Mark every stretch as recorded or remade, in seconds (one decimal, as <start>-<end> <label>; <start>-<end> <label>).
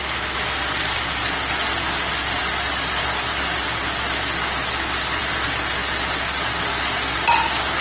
0.0-7.8 recorded